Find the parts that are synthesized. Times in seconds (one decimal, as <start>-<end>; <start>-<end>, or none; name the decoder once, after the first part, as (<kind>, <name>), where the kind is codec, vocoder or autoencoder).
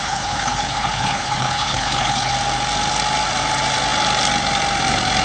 0.0-2.3 (codec, HILCodec)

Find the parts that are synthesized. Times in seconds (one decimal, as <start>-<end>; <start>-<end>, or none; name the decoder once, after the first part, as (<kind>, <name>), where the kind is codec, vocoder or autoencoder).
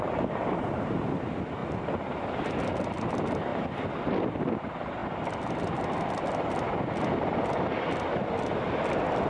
none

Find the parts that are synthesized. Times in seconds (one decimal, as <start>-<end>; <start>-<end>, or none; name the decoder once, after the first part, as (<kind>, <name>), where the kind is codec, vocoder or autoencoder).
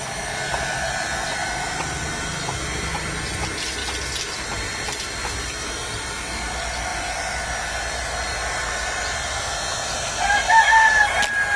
1.4-2.3 (vocoder, BigVGAN v2)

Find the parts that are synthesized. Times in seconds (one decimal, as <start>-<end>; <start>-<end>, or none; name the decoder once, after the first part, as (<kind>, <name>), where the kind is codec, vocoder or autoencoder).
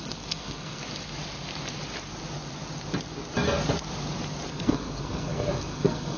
0.0-0.8 (codec, SNAC); 4.5-6.2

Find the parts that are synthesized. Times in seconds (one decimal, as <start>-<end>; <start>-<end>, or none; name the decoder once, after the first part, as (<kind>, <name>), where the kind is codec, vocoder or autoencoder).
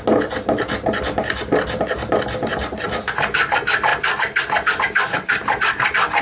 none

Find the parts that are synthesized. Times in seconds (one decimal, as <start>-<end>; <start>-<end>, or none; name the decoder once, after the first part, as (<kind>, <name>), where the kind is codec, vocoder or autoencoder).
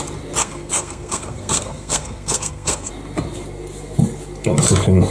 0.4-2.9 (codec, SNAC)